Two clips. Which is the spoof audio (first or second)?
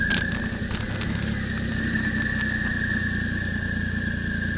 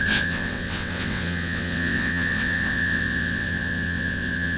second